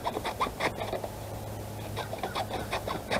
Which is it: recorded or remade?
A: remade